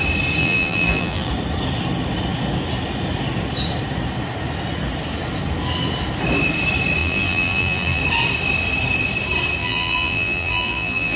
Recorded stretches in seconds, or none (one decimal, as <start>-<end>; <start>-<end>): 0.0-0.4; 1.3-7.0; 8.0-9.6